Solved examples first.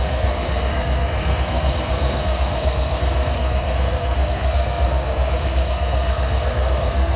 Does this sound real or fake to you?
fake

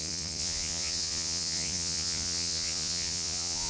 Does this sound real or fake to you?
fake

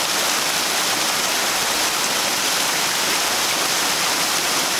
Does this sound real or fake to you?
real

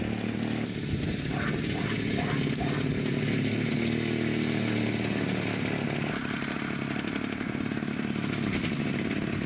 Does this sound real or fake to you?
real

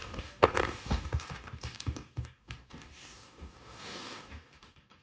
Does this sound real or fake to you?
fake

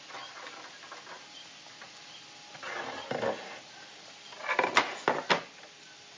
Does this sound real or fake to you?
real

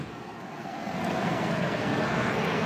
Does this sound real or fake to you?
fake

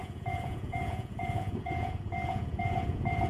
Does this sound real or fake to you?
fake